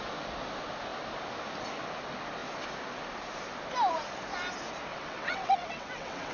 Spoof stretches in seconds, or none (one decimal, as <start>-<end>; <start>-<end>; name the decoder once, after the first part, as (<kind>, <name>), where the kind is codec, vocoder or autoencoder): 4.9-6.3 (vocoder, WaveNeXt)